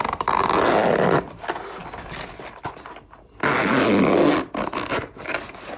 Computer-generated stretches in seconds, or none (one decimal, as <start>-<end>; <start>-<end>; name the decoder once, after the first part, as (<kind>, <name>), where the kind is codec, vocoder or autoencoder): none